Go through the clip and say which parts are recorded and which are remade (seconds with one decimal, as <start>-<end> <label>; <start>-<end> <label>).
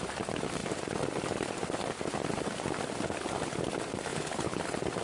0.0-4.1 recorded; 4.1-4.6 remade; 4.6-5.0 recorded